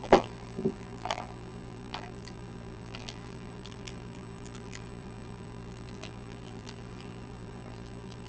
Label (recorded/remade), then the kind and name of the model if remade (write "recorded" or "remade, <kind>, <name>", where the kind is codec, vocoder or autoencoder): remade, vocoder, BigVGAN v2